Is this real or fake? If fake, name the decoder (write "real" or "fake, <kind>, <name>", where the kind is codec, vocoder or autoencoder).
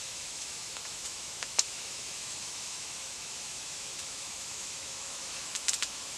fake, autoencoder, DAC-VAE